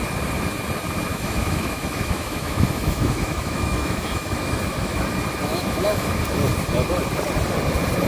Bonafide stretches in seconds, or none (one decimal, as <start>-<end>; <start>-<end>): 0.0-1.1; 5.0-5.5; 6.2-8.1